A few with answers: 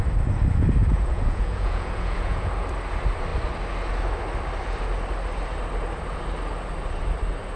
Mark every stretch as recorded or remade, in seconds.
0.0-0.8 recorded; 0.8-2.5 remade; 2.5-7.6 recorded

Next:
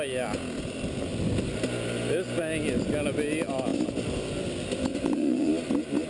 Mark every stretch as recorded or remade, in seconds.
0.0-4.9 recorded; 4.9-5.5 remade; 5.5-6.1 recorded

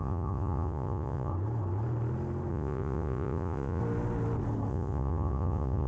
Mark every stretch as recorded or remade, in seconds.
0.0-1.3 remade; 1.3-2.5 recorded; 2.5-3.8 remade; 3.8-4.7 recorded; 4.7-5.9 remade

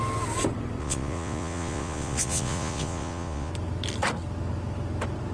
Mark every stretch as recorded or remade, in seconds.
0.0-0.8 recorded; 0.8-3.5 remade; 3.5-5.3 recorded

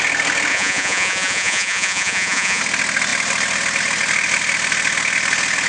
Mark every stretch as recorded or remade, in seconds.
0.0-0.5 recorded; 0.5-2.6 remade; 2.6-5.7 recorded

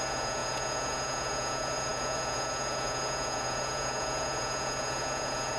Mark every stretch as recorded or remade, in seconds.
0.0-5.6 remade

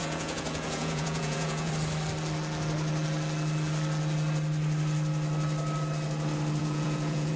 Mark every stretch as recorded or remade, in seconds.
0.0-1.7 remade; 1.7-6.6 recorded; 6.6-7.4 remade

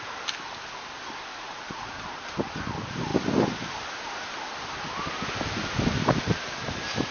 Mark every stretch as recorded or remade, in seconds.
0.0-1.3 recorded; 1.3-1.9 remade; 1.9-7.1 recorded